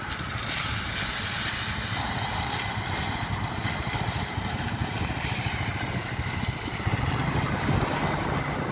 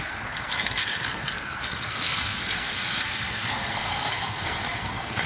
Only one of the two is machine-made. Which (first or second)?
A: second